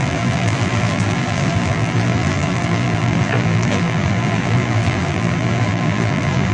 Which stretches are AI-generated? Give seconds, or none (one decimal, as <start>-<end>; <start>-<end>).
0.0-6.5